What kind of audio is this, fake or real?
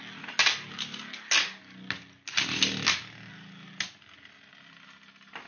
real